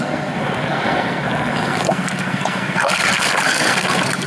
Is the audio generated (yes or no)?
yes